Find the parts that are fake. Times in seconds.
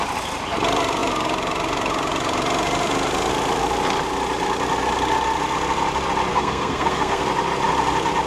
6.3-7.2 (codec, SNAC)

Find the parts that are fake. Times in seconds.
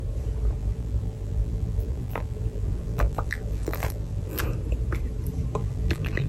0.6-4.4 (vocoder, BigVGAN v2); 5.6-6.3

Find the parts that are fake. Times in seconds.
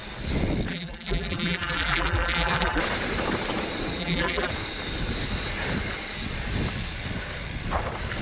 0.7-2.8 (vocoder, BigVGAN v2); 4.0-4.5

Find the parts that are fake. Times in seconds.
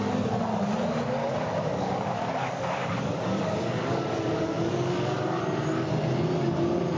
1.2-5.4 (codec, DAC)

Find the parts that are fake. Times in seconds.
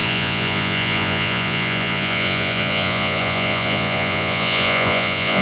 0.0-5.4 (vocoder, Vocos)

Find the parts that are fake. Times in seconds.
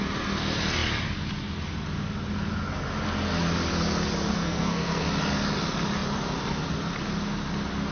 4.3-5.0 (codec, SNAC)